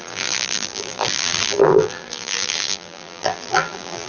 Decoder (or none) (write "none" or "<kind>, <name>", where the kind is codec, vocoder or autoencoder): vocoder, BigVGAN v2